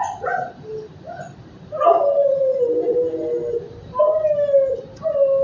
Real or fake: real